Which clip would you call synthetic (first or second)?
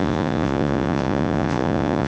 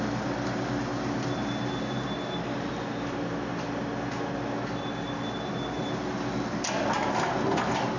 first